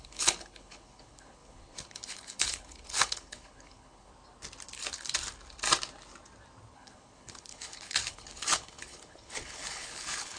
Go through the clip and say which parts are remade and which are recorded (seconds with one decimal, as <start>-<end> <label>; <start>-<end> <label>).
0.0-4.1 remade; 4.1-6.7 recorded; 6.7-10.4 remade